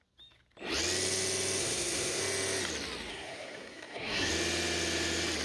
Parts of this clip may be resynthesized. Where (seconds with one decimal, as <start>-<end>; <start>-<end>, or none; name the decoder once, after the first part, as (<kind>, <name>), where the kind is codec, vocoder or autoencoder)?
1.6-2.2 (codec, SNAC); 3.1-4.3